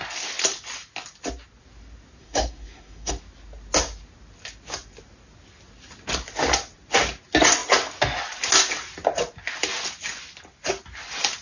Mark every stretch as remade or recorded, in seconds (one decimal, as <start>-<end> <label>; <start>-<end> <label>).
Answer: 0.0-2.2 recorded; 2.2-3.1 remade; 3.1-11.4 recorded